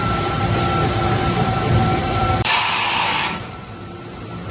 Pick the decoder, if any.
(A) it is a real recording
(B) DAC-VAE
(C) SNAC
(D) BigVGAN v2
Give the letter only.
D